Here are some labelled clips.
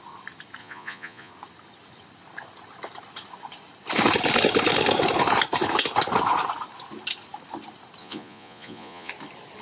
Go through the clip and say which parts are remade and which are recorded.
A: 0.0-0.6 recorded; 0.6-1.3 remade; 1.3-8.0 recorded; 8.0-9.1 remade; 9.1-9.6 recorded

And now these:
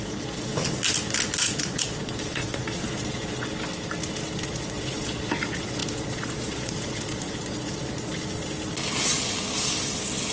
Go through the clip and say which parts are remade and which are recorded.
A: 0.0-0.5 remade; 0.5-1.4 recorded; 1.4-3.5 remade; 3.5-4.5 recorded; 4.5-8.1 remade; 8.1-10.3 recorded